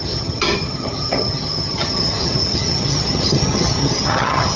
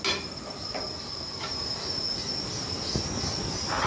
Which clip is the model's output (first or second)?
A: first